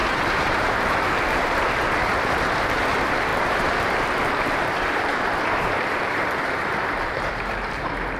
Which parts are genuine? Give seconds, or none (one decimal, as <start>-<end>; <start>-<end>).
none